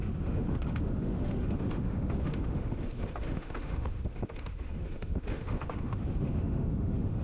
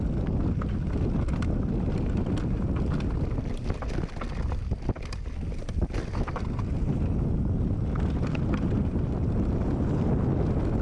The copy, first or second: first